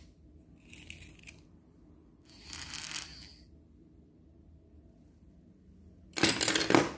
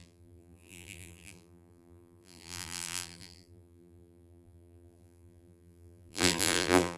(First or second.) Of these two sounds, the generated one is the second